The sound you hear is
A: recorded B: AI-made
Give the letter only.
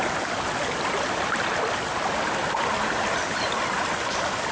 A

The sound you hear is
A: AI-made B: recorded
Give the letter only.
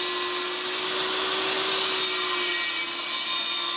B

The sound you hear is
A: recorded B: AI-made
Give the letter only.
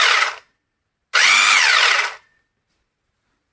A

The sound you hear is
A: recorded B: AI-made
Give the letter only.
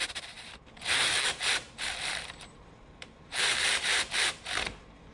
B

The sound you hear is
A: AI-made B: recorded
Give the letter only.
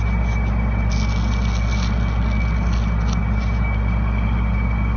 B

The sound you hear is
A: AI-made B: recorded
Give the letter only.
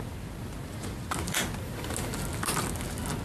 B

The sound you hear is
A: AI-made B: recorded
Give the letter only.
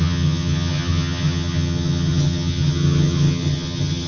A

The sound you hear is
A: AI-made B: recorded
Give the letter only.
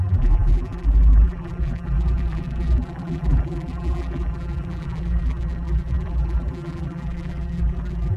A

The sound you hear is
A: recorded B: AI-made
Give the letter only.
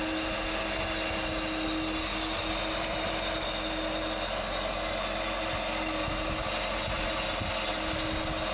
A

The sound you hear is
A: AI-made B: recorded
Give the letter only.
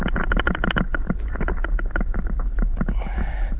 B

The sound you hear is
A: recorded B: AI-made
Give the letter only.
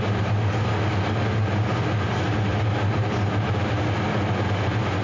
A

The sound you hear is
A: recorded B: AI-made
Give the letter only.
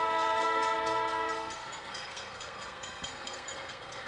B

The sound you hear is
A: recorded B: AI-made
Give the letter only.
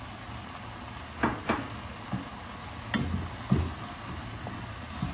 A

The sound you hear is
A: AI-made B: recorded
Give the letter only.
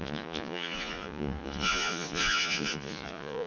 A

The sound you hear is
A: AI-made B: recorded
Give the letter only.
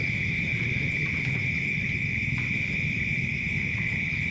A